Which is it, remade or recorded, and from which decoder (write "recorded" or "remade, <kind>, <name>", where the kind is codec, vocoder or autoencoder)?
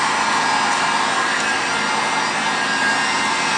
recorded